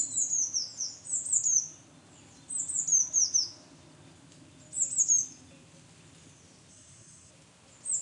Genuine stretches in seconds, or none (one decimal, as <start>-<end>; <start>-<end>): 0.0-6.7; 7.3-8.0